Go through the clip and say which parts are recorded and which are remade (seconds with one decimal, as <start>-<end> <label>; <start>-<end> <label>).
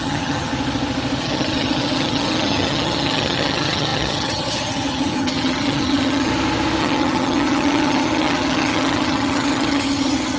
0.0-0.5 remade; 0.5-1.2 recorded; 1.2-6.3 remade; 6.3-6.8 recorded; 6.8-10.4 remade